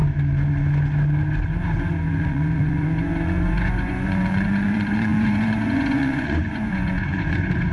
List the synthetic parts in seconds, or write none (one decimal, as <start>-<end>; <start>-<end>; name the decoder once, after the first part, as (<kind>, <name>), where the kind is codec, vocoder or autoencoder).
2.2-7.7 (vocoder, Vocos)